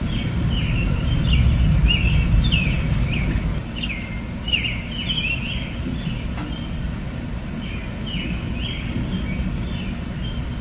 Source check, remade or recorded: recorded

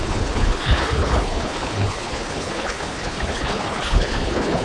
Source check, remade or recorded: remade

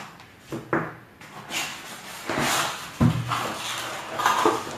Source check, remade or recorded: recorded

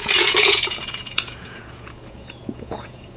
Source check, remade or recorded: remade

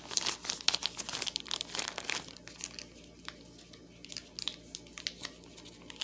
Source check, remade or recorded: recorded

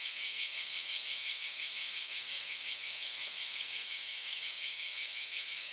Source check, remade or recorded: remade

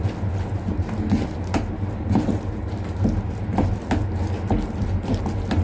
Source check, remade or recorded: recorded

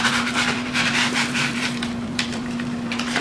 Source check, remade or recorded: remade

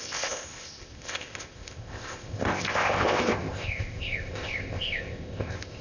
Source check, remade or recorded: remade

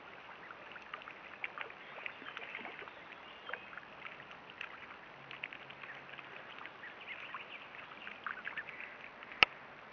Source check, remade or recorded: recorded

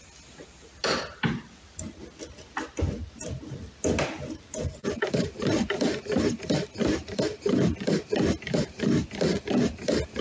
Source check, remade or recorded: recorded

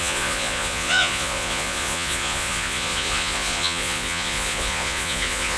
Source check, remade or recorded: remade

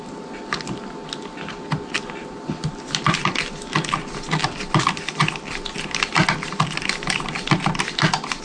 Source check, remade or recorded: recorded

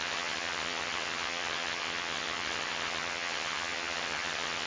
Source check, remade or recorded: remade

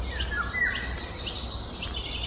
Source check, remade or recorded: recorded